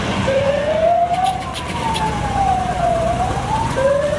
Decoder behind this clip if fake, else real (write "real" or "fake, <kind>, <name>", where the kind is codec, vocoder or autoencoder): fake, vocoder, Vocos